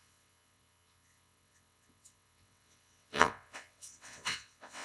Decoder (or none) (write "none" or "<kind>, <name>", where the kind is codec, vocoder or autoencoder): vocoder, WaveNeXt